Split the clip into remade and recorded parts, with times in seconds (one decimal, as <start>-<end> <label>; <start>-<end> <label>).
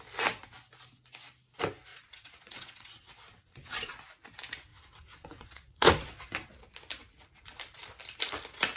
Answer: 0.0-1.9 recorded; 1.9-3.9 remade; 3.9-4.7 recorded; 4.7-6.5 remade; 6.5-8.8 recorded